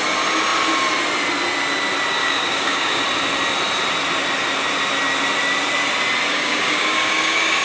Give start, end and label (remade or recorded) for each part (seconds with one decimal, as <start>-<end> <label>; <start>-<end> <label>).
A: 0.0-2.2 recorded; 2.2-3.0 remade; 3.0-6.3 recorded; 6.3-7.6 remade

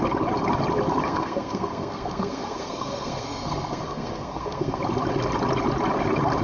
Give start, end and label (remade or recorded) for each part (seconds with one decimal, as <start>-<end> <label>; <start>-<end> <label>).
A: 0.0-1.0 recorded; 1.0-4.8 remade; 4.8-6.4 recorded

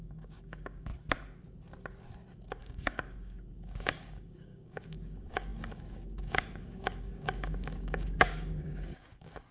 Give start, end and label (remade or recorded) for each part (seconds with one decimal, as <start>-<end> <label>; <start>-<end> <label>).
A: 0.0-0.9 remade; 0.9-2.6 recorded; 2.6-9.5 remade

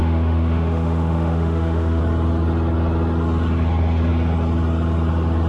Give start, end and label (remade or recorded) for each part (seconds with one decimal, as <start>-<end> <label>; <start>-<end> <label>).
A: 0.0-2.0 remade; 2.0-5.5 recorded

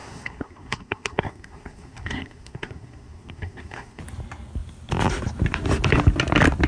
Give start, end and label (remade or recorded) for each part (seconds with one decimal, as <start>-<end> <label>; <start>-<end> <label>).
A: 0.0-4.0 remade; 4.0-6.7 recorded

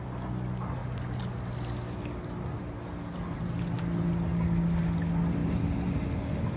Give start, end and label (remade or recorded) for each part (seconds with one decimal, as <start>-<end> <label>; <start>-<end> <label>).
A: 0.0-6.6 recorded